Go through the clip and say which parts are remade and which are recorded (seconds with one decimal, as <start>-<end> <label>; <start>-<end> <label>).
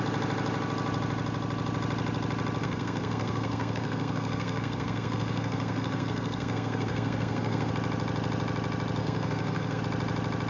0.0-2.6 recorded; 2.6-7.7 remade; 7.7-9.0 recorded; 9.0-9.8 remade; 9.8-10.5 recorded